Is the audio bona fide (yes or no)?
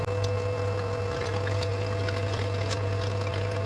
yes